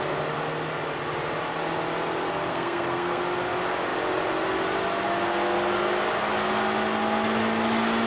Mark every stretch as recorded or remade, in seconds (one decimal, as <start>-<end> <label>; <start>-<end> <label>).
0.0-2.5 recorded; 2.5-3.2 remade; 3.2-8.1 recorded